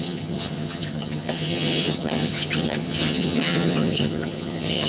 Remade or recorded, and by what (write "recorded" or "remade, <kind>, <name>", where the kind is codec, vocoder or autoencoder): remade, vocoder, HiFi-GAN